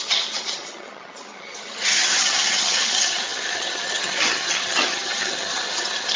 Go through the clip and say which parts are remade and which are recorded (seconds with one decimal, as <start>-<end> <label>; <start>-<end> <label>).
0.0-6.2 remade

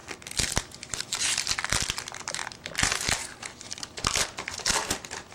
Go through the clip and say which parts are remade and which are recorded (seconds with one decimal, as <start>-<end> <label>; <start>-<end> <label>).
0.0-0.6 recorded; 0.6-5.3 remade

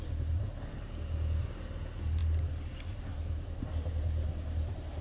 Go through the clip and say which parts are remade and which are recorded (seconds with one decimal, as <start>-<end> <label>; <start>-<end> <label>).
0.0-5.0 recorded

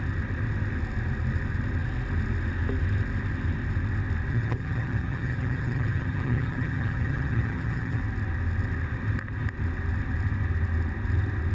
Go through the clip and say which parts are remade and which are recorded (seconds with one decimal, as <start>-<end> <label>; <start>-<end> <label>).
0.0-4.3 recorded; 4.3-8.0 remade; 8.0-11.5 recorded

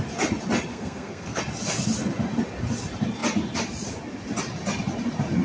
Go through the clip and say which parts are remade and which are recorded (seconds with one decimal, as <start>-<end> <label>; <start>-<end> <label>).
0.0-0.7 recorded; 0.7-1.4 remade; 1.4-5.4 recorded

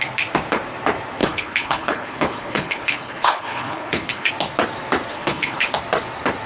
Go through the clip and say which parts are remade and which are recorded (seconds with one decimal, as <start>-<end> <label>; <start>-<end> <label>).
0.0-1.2 recorded; 1.2-4.3 remade; 4.3-5.1 recorded; 5.1-5.7 remade; 5.7-6.5 recorded

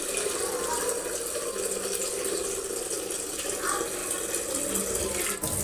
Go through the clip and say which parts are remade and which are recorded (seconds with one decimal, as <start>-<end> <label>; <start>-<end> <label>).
0.0-5.6 recorded